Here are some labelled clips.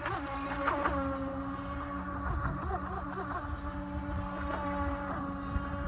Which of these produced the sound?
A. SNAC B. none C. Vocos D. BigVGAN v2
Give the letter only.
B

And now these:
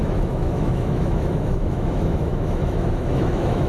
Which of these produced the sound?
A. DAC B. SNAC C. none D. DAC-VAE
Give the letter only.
D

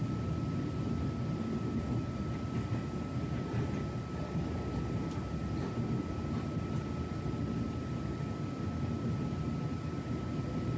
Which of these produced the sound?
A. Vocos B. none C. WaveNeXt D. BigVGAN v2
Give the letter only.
B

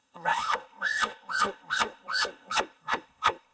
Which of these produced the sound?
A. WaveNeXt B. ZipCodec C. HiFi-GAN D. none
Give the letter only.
B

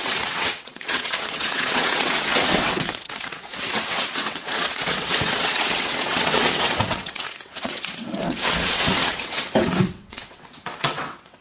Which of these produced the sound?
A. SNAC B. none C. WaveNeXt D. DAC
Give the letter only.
C